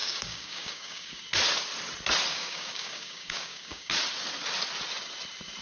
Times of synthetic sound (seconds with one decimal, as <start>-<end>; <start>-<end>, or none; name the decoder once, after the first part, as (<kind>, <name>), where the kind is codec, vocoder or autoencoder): 0.0-1.2 (codec, DAC); 2.3-3.9